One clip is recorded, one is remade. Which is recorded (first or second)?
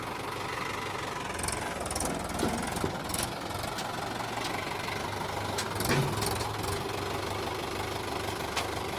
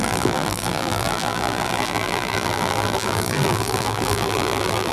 first